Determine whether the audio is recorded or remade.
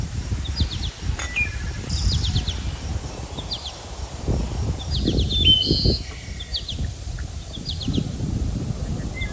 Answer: recorded